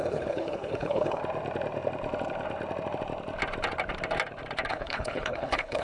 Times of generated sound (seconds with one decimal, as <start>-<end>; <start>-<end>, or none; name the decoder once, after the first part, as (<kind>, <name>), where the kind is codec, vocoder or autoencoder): 0.0-1.2 (codec, HILCodec); 4.7-5.8